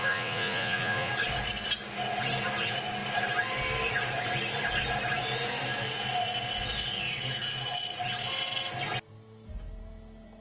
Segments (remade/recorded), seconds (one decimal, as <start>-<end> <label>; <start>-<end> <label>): 0.0-1.1 remade; 1.1-10.4 recorded